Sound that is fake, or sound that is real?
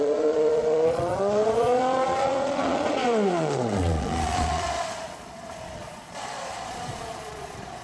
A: fake